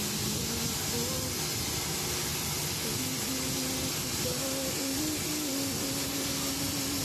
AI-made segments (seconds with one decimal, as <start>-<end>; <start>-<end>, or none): none